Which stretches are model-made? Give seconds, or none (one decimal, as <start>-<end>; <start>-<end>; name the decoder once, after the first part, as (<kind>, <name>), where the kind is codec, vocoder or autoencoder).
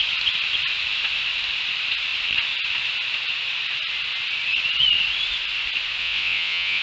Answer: 6.0-6.8 (vocoder, WaveNeXt)